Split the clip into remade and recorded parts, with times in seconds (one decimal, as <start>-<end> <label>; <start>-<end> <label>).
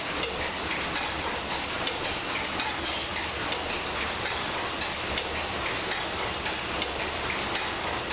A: 0.0-8.1 recorded